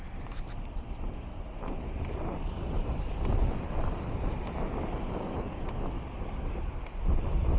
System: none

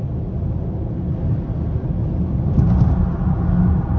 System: none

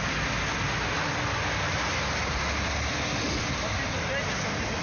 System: none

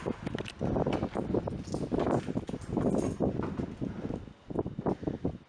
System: none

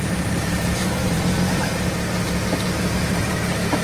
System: vocoder, BigVGAN v2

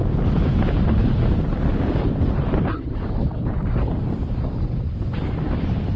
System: none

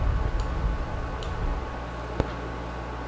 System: none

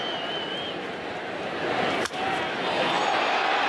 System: none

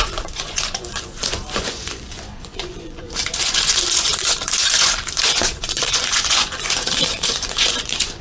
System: vocoder, Vocos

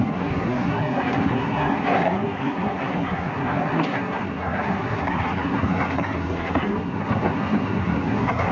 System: codec, SNAC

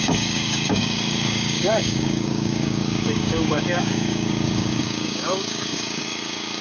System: codec, DAC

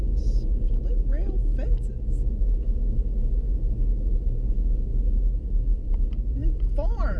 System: none